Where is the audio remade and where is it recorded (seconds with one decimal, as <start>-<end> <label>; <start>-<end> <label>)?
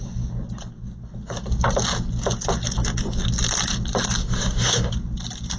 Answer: 0.0-4.2 recorded; 4.2-4.9 remade; 4.9-5.6 recorded